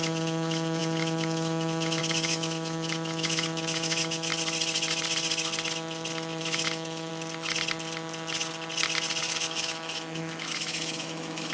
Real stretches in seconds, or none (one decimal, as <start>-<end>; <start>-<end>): 4.3-6.4; 7.1-9.2